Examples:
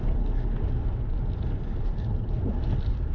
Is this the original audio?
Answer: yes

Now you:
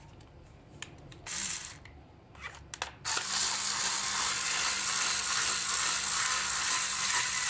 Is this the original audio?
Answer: yes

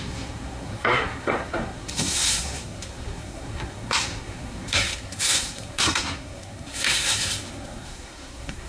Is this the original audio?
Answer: no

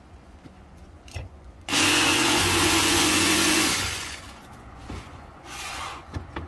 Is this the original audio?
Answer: no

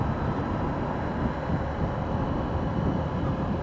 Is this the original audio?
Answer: yes